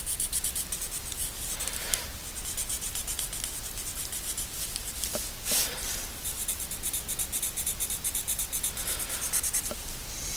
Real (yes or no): yes